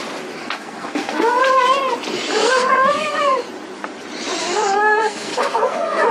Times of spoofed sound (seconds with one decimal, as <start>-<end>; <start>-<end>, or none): 0.4-1.4; 2.4-3.2; 4.4-6.1

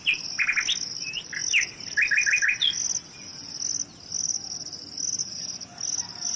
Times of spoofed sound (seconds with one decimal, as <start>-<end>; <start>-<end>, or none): none

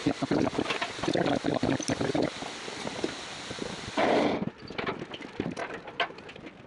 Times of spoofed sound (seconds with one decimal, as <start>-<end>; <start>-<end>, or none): none

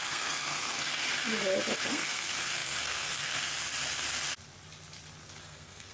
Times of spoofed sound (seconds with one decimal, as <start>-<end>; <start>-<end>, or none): 0.0-1.0; 1.9-3.6; 5.4-5.9

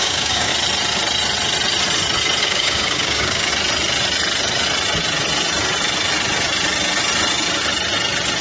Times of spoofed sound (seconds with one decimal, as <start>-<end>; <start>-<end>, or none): 0.0-0.5; 2.4-3.5

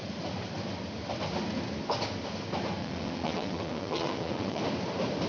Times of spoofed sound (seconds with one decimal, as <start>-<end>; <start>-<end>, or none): 2.8-4.6

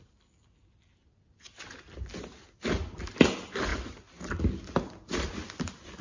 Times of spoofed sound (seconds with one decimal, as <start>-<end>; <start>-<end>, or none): none

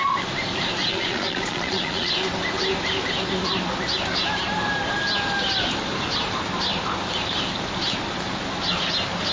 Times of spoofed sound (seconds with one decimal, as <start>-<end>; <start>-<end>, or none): 0.8-2.1